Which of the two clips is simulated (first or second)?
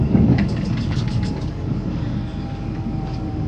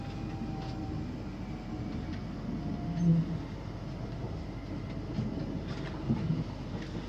first